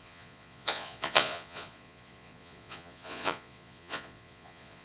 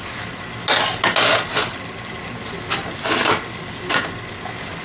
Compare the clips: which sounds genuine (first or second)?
second